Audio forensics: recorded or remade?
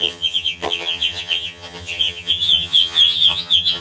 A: remade